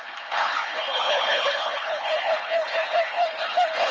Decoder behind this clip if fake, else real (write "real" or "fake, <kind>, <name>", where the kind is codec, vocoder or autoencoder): fake, codec, HILCodec